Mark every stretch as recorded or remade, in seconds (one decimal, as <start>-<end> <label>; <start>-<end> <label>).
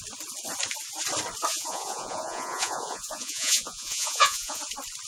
0.0-1.5 recorded; 1.5-4.6 remade; 4.6-5.1 recorded